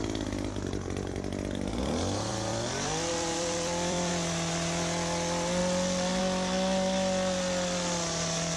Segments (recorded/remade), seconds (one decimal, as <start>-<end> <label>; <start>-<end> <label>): 0.0-2.3 recorded; 2.3-4.1 remade; 4.1-8.6 recorded